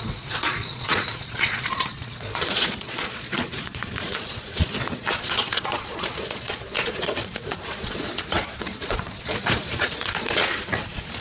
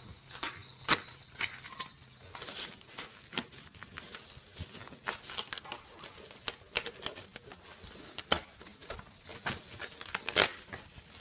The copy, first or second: first